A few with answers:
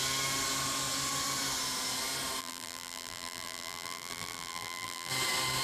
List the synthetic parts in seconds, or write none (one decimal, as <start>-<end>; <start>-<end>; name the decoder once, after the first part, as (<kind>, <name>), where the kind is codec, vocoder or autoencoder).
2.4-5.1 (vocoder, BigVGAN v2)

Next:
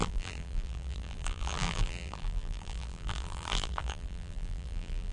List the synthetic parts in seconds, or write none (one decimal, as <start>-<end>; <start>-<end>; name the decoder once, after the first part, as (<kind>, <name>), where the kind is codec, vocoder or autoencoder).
0.0-5.1 (vocoder, BigVGAN v2)

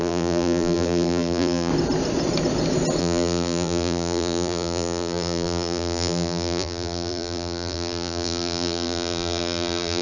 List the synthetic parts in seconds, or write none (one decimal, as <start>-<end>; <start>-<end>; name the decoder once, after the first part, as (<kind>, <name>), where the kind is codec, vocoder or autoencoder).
0.0-1.7 (vocoder, BigVGAN v2); 3.0-10.0